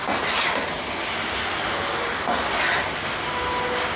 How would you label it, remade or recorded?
recorded